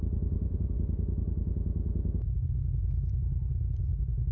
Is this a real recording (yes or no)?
yes